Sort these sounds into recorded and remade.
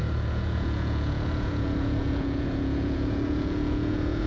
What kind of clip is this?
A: remade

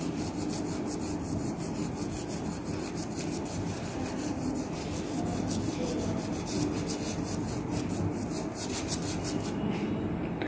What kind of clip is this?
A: recorded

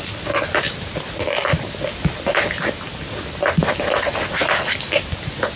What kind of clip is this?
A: recorded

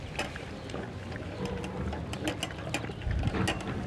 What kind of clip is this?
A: recorded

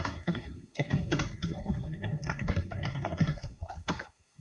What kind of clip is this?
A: remade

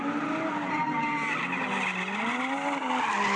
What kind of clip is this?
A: recorded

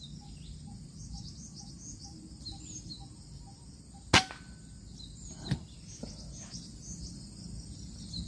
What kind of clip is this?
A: recorded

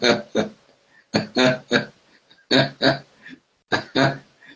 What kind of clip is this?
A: recorded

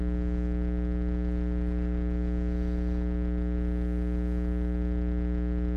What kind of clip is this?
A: recorded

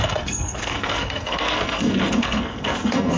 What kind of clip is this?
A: remade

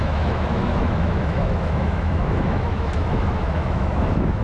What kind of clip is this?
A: remade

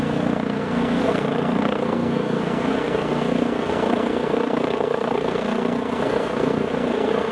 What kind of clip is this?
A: remade